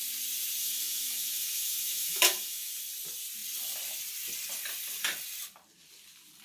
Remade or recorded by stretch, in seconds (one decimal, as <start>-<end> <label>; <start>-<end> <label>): 0.0-0.6 recorded; 0.6-2.8 remade; 2.8-6.4 recorded